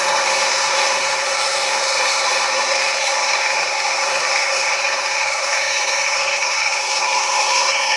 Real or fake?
fake